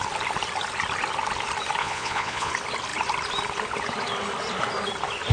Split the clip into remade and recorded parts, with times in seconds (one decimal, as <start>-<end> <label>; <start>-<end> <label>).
0.0-1.8 recorded; 1.8-2.5 remade; 2.5-5.3 recorded